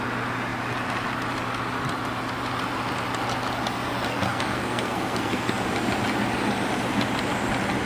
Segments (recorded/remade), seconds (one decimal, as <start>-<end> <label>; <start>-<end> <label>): 0.0-4.1 recorded; 4.1-5.5 remade; 5.5-7.9 recorded